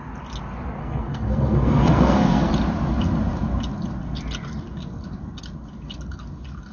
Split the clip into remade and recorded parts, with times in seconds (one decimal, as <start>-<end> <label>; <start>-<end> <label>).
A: 0.0-0.8 recorded; 0.8-2.5 remade; 2.5-6.7 recorded